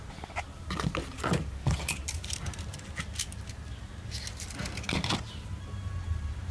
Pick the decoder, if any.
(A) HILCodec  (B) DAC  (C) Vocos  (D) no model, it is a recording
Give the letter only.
D